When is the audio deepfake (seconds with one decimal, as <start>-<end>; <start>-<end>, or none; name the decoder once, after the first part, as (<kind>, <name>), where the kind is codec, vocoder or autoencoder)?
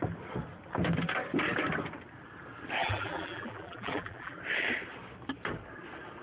2.8-4.4 (vocoder, BigVGAN v2)